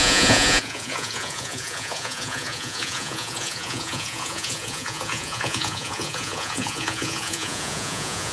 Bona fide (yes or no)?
no